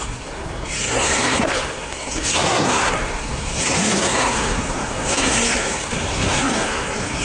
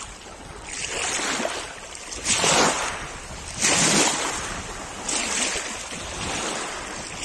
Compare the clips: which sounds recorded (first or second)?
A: second